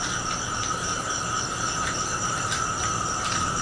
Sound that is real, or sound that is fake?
fake